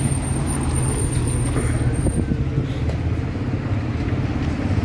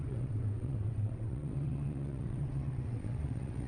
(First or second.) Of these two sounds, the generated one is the second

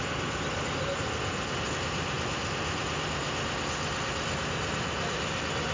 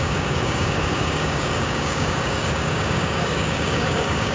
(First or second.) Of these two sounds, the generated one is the second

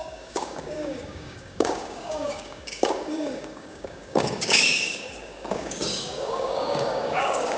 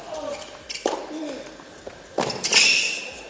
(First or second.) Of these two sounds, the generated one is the first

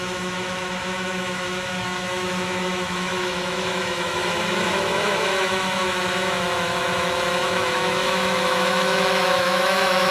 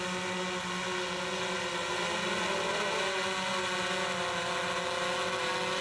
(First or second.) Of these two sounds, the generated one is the first